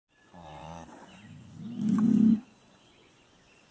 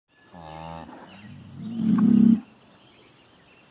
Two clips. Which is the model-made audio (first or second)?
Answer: first